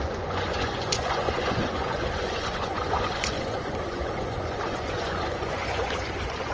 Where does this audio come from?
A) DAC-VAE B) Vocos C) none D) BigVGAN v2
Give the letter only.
B